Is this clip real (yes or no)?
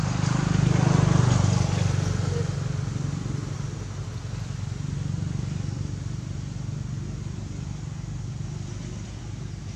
yes